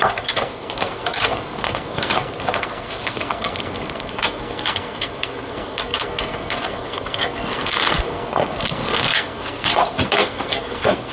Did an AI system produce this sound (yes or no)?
yes